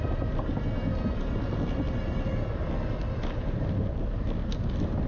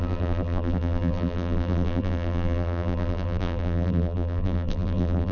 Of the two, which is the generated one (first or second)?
second